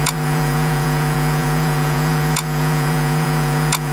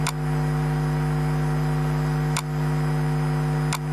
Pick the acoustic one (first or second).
second